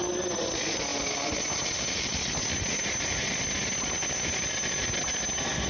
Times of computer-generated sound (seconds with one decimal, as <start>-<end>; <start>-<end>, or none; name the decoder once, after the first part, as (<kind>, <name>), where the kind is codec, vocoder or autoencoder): none